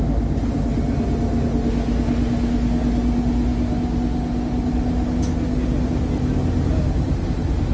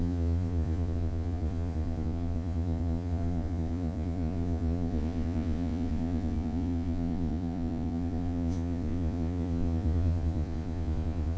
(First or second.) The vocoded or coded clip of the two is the second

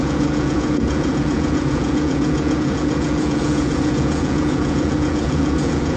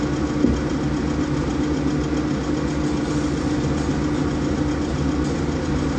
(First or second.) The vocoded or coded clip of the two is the first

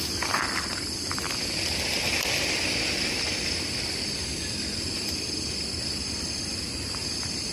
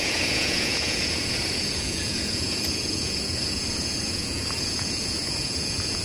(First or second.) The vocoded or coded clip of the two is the second